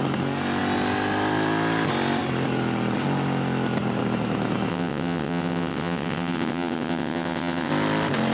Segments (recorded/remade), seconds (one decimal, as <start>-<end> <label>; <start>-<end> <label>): 0.0-4.7 recorded; 4.7-7.7 remade; 7.7-8.3 recorded